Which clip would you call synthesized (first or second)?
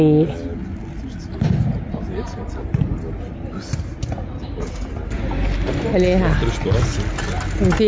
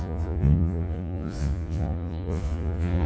second